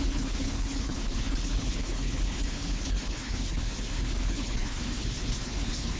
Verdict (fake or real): fake